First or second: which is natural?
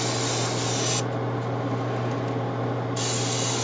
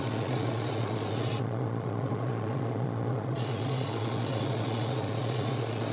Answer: first